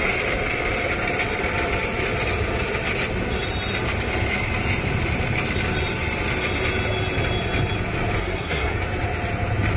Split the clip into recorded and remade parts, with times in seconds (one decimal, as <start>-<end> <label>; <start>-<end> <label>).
0.0-8.2 recorded; 8.2-8.8 remade; 8.8-9.8 recorded